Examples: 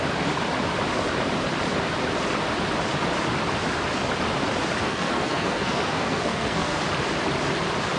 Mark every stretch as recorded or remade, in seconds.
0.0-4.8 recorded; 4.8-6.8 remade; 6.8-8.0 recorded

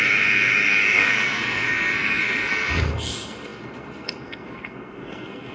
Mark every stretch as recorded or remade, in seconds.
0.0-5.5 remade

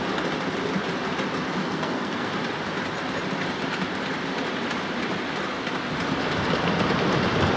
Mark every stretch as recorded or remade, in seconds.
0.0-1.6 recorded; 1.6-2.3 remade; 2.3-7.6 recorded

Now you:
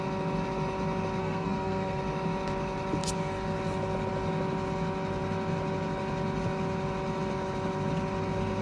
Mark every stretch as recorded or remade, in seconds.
0.0-1.2 recorded; 1.2-2.0 remade; 2.0-8.6 recorded

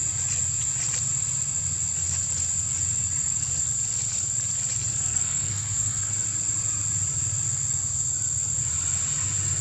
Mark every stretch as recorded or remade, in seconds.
0.0-4.9 recorded; 4.9-6.1 remade; 6.1-9.6 recorded

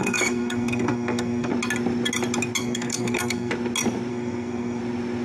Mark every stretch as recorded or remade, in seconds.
0.0-1.5 remade; 1.5-2.6 recorded; 2.6-3.5 remade; 3.5-4.1 recorded; 4.1-4.8 remade; 4.8-5.2 recorded